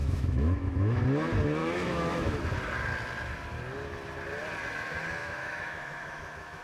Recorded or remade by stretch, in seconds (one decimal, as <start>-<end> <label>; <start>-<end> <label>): 0.0-1.0 remade; 1.0-1.6 recorded; 1.6-2.4 remade; 2.4-5.2 recorded; 5.2-6.6 remade